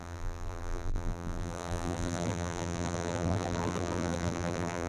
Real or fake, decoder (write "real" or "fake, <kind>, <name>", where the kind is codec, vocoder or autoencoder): fake, vocoder, BigVGAN v2